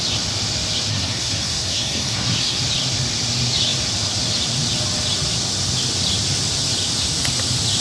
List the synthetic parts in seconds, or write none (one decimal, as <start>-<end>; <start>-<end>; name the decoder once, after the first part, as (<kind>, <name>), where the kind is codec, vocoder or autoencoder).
0.9-2.6 (codec, SNAC)